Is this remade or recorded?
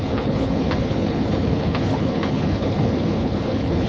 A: remade